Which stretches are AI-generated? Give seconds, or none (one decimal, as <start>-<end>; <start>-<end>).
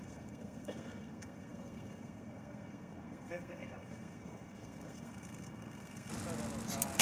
0.0-6.1